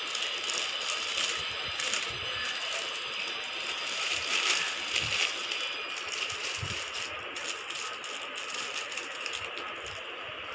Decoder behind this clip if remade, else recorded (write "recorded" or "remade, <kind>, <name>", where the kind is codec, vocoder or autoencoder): recorded